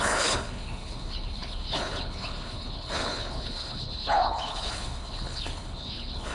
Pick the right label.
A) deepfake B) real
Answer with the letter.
A